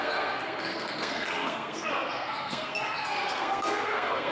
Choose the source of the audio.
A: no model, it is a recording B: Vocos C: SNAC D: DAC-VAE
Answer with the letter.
C